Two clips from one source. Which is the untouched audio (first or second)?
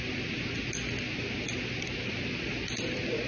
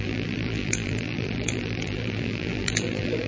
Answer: first